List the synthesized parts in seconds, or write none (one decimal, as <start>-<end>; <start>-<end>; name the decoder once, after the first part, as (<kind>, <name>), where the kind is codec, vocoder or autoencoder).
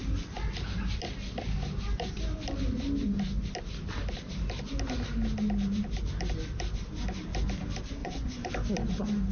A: 8.0-8.5 (vocoder, Vocos)